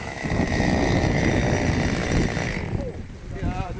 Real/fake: real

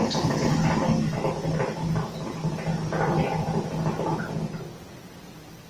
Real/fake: real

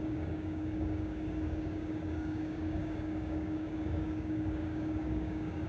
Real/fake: fake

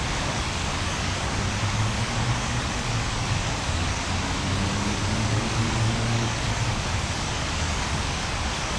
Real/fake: fake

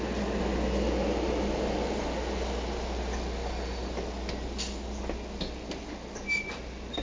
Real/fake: real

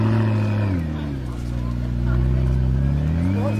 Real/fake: real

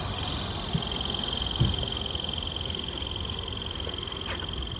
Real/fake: real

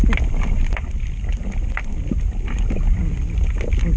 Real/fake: real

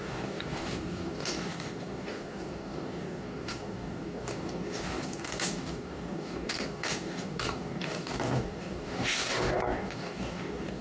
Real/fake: fake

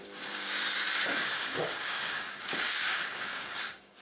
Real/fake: fake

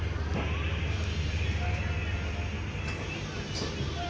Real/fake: real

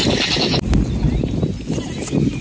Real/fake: real